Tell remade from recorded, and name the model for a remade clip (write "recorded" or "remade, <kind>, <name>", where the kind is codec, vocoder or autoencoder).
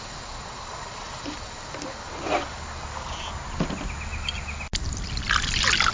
recorded